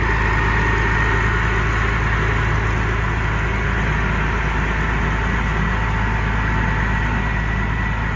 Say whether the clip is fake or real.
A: real